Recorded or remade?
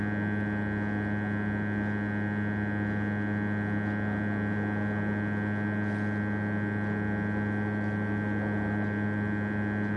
recorded